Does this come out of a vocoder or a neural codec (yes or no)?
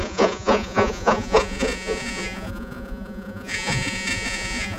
yes